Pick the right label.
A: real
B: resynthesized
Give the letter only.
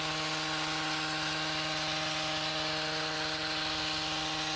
A